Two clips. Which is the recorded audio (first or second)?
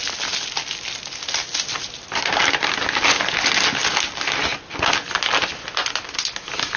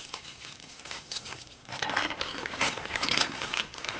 first